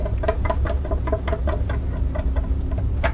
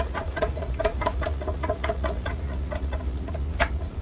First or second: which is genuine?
first